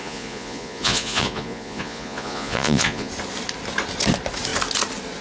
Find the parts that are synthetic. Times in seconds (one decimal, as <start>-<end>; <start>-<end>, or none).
0.0-3.1